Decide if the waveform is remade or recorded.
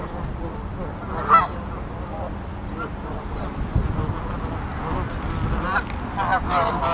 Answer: recorded